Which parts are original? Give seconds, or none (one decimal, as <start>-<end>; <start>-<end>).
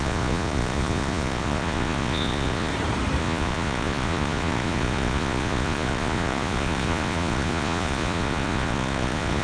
2.7-3.2